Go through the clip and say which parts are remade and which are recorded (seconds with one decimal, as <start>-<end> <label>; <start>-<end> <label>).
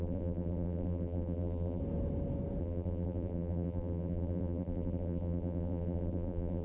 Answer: 0.0-1.8 remade; 1.8-2.6 recorded; 2.6-6.6 remade